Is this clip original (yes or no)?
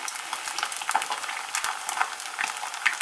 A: yes